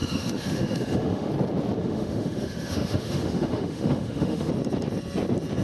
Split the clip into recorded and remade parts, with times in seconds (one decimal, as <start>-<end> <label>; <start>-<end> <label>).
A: 0.0-1.3 remade; 1.3-1.8 recorded; 1.8-4.5 remade; 4.5-5.6 recorded